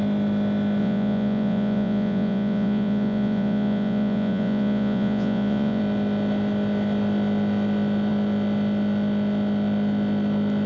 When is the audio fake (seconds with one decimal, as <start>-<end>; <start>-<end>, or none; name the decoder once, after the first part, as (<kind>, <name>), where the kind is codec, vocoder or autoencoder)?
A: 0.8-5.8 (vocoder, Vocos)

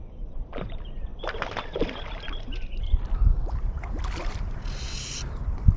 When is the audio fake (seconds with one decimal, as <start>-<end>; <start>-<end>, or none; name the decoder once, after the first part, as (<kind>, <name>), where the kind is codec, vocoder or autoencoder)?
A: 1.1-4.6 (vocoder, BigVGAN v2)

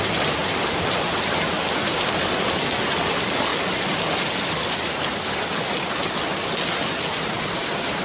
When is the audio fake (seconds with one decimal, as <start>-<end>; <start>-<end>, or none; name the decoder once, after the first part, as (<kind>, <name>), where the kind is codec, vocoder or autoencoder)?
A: 0.4-2.8 (vocoder, BigVGAN v2); 3.5-4.9

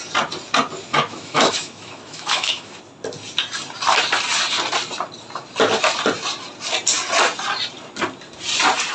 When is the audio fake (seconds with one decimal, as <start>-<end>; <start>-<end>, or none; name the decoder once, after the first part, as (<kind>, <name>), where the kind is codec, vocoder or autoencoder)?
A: 0.9-2.8 (autoencoder, DAC-VAE)

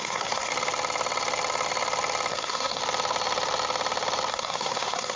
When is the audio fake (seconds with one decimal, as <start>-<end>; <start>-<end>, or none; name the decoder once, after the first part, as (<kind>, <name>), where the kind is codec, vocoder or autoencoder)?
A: 0.0-0.5 (codec, SNAC); 2.3-2.8; 4.3-5.2